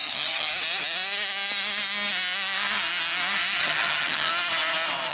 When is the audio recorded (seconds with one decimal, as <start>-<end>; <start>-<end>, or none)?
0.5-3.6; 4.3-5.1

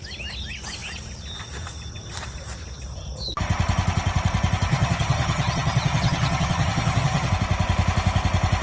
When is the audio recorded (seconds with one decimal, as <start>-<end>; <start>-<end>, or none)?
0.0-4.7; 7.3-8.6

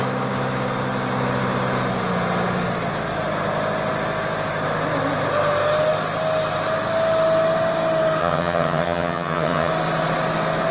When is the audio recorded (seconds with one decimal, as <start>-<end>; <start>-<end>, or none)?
0.0-8.2; 9.7-10.7